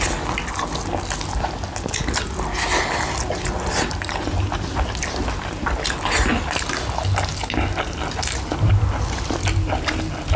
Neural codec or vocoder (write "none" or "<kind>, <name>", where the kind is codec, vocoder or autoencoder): none